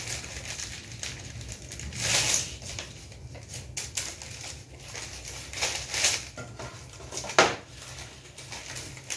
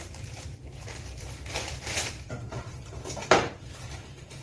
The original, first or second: first